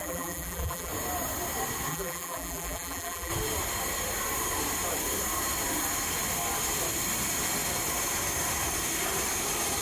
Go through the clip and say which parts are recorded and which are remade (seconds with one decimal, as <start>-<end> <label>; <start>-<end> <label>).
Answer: 0.0-0.9 remade; 0.9-1.9 recorded; 1.9-3.3 remade; 3.3-9.8 recorded

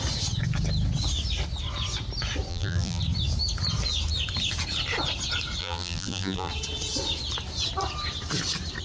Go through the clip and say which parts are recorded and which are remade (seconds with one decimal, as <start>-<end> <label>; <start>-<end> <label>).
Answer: 0.0-2.5 recorded; 2.5-3.0 remade; 3.0-5.6 recorded; 5.6-6.5 remade; 6.5-8.8 recorded

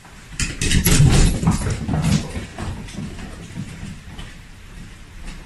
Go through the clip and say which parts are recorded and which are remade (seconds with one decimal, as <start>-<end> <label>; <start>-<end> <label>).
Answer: 0.0-5.5 remade

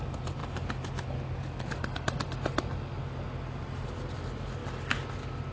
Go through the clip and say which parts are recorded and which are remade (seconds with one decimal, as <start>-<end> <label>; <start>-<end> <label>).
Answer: 0.0-4.6 remade; 4.6-5.1 recorded; 5.1-5.5 remade

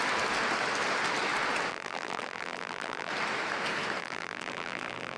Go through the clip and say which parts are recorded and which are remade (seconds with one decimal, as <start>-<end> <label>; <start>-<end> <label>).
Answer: 0.0-1.7 recorded; 1.7-3.1 remade; 3.1-4.0 recorded; 4.0-5.2 remade